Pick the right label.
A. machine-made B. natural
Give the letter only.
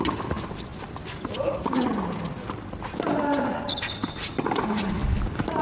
B